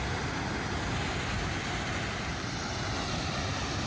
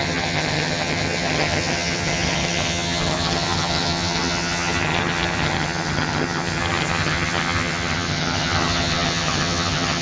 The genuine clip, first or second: first